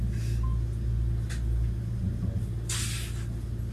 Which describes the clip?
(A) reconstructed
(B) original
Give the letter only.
B